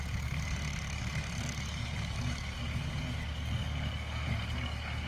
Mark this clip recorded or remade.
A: remade